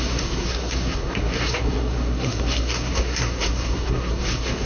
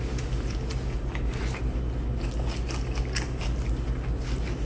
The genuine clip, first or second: second